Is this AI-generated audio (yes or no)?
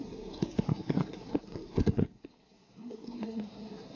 yes